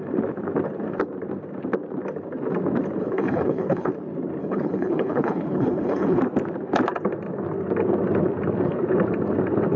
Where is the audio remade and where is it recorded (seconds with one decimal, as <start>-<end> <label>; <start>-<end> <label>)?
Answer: 0.0-3.0 recorded; 3.0-3.9 remade; 3.9-4.4 recorded; 4.4-6.2 remade; 6.2-9.8 recorded